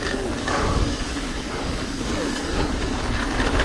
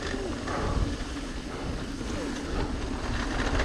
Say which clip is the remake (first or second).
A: first